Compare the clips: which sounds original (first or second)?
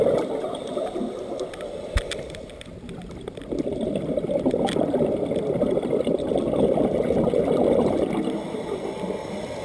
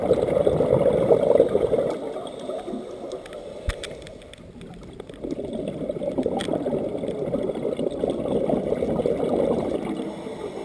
second